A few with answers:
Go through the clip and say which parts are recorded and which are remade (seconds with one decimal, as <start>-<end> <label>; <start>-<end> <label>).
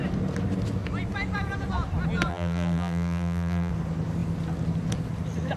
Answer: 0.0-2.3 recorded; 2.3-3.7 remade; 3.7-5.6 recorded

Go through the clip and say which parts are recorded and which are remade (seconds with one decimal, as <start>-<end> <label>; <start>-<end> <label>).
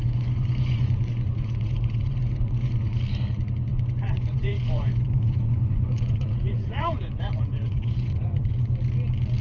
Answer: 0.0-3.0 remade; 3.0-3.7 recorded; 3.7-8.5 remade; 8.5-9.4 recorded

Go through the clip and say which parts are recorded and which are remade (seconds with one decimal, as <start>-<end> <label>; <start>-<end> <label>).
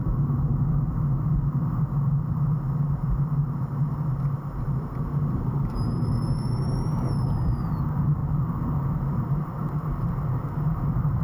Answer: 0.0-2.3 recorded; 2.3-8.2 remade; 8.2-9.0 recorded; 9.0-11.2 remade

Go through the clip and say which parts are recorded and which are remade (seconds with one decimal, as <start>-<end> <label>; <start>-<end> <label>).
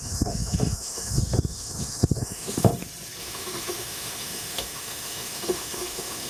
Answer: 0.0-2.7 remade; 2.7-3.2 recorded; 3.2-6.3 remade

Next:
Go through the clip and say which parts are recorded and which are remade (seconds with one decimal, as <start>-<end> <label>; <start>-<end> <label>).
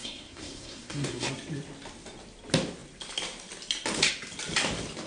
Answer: 0.0-1.3 remade; 1.3-5.1 recorded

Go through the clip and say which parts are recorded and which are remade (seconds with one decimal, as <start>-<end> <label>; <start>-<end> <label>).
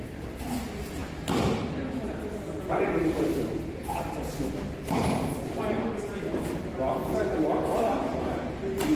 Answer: 0.0-9.0 recorded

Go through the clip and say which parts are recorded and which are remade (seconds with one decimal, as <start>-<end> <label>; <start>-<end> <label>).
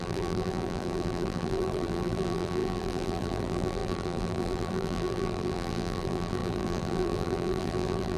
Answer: 0.0-8.2 remade